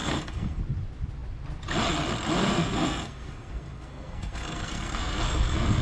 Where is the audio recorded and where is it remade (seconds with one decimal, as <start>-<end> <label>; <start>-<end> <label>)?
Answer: 0.0-0.6 remade; 0.6-2.4 recorded; 2.4-5.8 remade